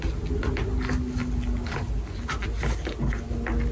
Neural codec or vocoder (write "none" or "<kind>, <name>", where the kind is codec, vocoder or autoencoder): none